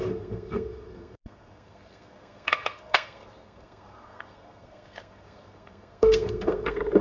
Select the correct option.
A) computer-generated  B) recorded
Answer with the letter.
A